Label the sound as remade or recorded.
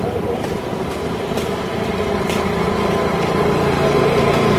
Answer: recorded